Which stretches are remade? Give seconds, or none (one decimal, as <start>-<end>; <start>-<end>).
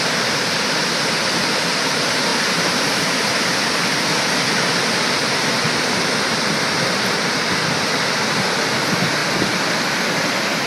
0.0-10.7